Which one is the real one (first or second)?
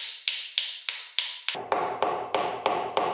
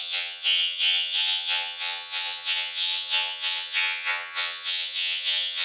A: first